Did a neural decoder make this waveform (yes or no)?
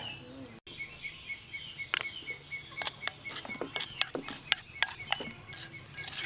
no